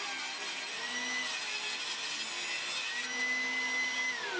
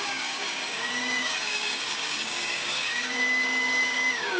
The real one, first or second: first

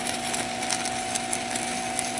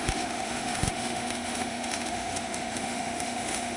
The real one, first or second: first